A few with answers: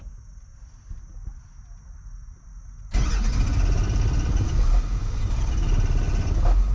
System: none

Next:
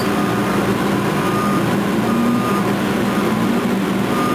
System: none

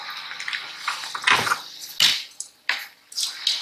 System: none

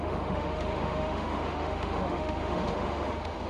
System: autoencoder, DAC-VAE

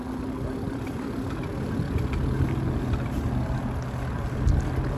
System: none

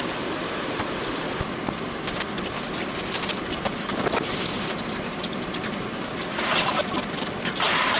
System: none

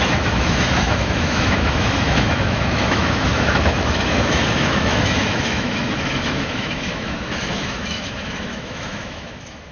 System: autoencoder, DAC-VAE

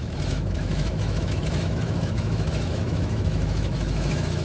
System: autoencoder, DAC-VAE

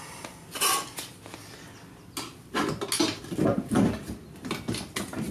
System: none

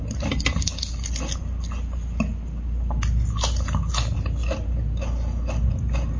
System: none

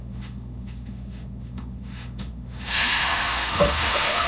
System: autoencoder, DAC-VAE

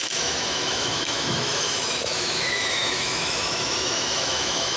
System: autoencoder, DAC-VAE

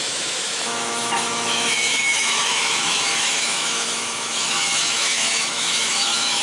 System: autoencoder, DAC-VAE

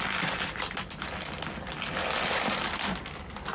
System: none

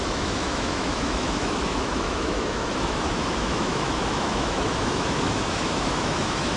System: autoencoder, DAC-VAE